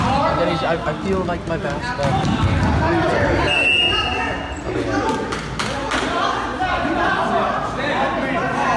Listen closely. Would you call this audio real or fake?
real